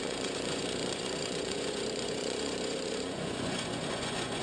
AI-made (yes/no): yes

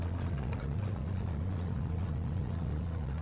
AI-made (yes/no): yes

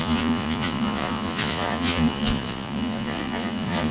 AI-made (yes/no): yes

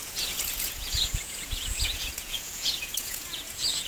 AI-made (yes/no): yes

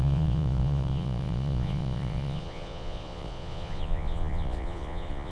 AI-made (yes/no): yes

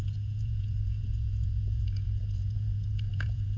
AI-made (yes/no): yes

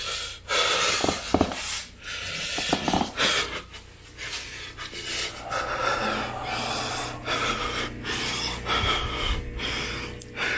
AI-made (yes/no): no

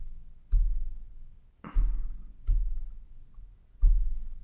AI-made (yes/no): no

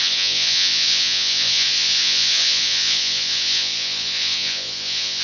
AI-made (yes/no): yes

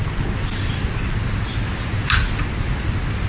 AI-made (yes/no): no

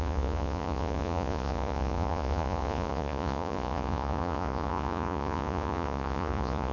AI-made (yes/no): yes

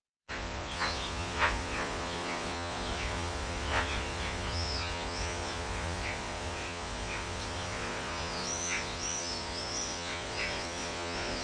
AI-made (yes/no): yes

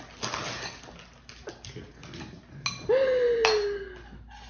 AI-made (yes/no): no